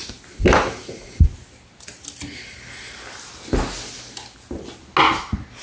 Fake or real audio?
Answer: real